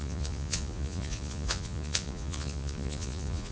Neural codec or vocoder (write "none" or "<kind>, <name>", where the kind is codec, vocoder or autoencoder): vocoder, Vocos